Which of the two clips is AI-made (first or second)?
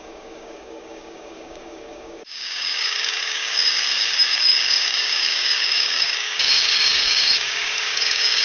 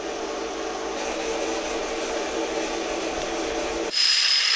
first